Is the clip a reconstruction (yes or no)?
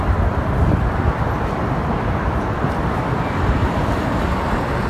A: yes